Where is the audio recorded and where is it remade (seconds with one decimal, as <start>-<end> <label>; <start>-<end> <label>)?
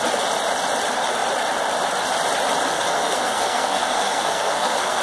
0.0-2.7 recorded; 2.7-5.0 remade